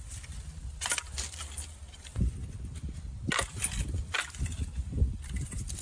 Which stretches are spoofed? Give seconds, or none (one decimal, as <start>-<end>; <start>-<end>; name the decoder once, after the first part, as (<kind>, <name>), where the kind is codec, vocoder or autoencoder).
0.0-1.8 (vocoder, BigVGAN v2); 3.8-5.8